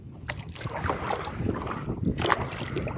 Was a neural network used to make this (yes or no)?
no